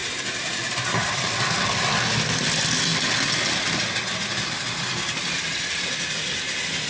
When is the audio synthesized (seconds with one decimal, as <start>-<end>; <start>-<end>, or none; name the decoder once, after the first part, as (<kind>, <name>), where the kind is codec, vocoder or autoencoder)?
0.0-1.2 (vocoder, BigVGAN v2)

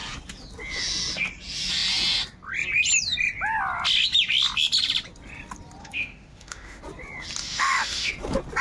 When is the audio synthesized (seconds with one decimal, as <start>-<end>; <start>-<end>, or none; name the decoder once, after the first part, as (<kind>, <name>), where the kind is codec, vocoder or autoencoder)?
5.8-6.8 (autoencoder, DAC-VAE); 7.4-8.1